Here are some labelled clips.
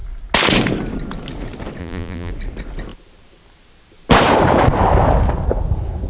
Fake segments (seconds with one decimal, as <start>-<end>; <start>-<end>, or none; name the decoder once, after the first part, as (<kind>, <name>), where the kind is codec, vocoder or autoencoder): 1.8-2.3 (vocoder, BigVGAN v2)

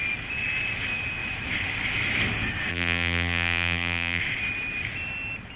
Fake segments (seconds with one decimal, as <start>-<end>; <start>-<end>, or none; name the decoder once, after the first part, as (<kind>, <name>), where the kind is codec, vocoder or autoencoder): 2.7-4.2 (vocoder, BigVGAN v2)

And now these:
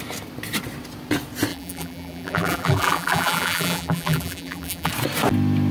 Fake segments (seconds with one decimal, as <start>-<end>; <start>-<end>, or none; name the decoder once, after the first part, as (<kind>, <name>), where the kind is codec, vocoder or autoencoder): 1.5-4.9 (vocoder, BigVGAN v2)

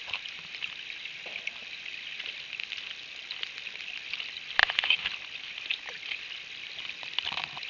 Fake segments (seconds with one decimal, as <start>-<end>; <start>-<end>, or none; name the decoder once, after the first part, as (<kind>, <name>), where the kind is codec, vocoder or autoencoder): none

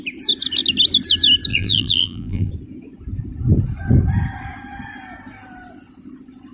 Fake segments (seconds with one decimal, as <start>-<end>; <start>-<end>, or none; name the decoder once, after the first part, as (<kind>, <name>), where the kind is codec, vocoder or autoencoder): 1.5-2.5 (vocoder, BigVGAN v2)